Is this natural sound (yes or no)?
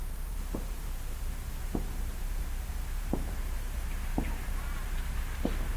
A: no